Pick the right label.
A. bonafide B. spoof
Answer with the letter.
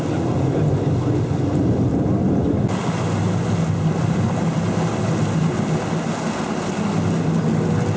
A